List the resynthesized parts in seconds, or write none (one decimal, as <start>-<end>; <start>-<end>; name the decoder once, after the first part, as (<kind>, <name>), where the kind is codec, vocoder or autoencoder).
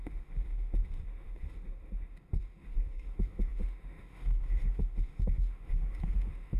0.0-6.6 (autoencoder, DAC-VAE)